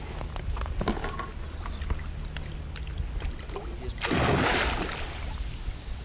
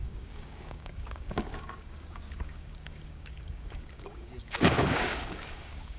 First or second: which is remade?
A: second